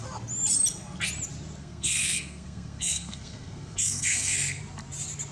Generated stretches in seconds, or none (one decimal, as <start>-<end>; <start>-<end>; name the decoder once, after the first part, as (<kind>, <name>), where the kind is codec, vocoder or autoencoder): 1.6-4.6 (codec, SNAC)